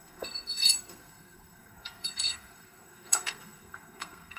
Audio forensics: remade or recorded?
remade